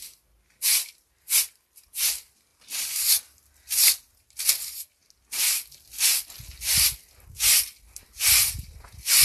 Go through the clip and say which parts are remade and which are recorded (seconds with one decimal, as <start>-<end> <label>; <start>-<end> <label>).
0.0-9.2 recorded